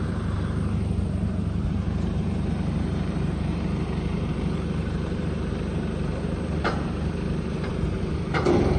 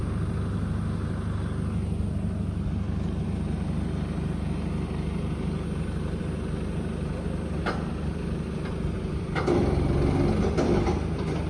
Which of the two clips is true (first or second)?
second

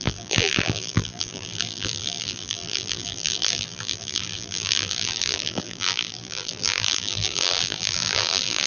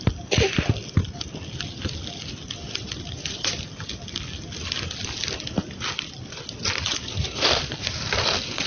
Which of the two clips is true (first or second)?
second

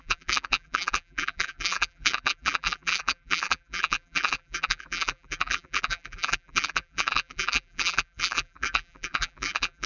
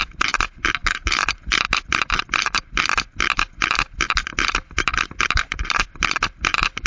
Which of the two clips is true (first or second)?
second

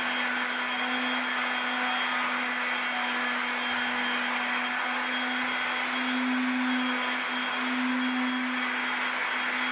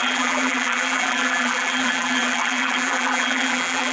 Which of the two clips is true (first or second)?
first